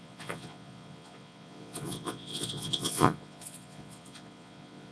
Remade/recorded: remade